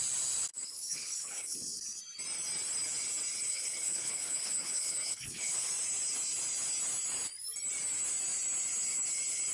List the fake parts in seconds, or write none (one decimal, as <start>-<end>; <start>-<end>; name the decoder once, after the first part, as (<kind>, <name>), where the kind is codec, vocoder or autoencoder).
0.5-2.0 (codec, HILCodec); 3.5-5.7